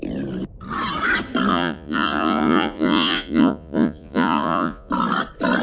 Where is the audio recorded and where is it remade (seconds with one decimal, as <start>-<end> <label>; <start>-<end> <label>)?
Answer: 0.0-1.5 recorded; 1.5-4.9 remade; 4.9-5.6 recorded